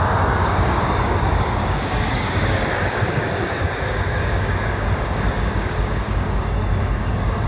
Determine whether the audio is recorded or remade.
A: remade